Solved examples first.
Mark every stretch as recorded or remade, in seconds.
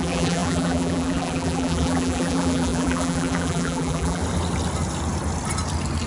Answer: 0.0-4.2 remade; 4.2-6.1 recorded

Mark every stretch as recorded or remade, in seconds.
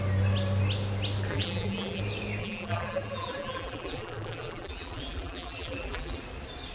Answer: 0.0-1.3 recorded; 1.3-2.0 remade; 2.0-2.4 recorded; 2.4-6.2 remade; 6.2-6.7 recorded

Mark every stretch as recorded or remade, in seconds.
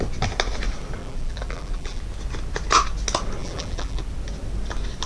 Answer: 0.0-1.0 recorded; 1.0-2.0 remade; 2.0-3.4 recorded; 3.4-4.0 remade; 4.0-5.1 recorded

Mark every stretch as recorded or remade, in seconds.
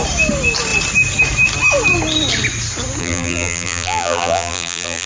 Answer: 0.0-3.0 recorded; 3.0-5.1 remade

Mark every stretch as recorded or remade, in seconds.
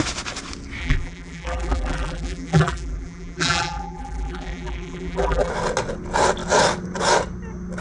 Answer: 0.0-0.8 recorded; 0.8-5.5 remade; 5.5-7.8 recorded